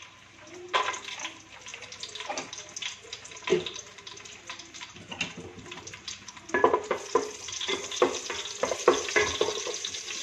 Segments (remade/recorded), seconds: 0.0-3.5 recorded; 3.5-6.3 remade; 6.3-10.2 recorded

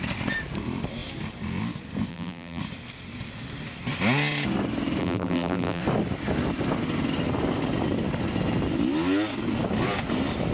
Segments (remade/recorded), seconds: 0.0-2.1 recorded; 2.1-2.6 remade; 2.6-5.0 recorded; 5.0-5.8 remade; 5.8-10.5 recorded

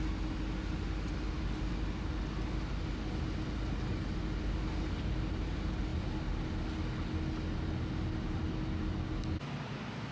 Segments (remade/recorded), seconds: 0.0-10.1 recorded

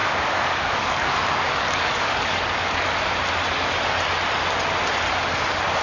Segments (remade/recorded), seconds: 0.0-2.8 remade; 2.8-5.8 recorded

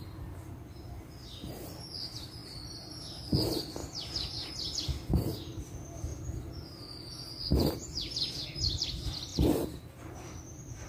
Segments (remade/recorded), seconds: 0.0-2.4 recorded; 2.4-3.0 remade; 3.0-10.9 recorded